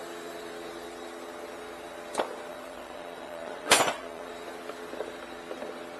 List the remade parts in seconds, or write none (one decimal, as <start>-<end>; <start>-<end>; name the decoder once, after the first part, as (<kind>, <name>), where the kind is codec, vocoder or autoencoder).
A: 2.5-4.3 (vocoder, Vocos)